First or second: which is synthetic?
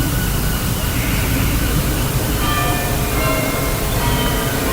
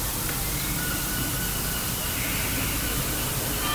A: first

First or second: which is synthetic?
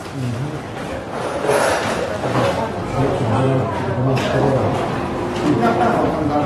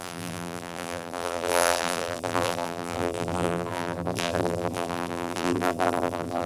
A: second